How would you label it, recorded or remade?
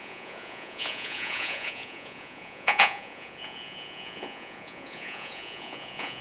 remade